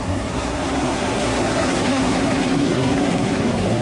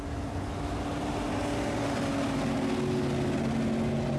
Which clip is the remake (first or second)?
first